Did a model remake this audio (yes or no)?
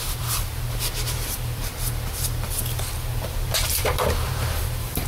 yes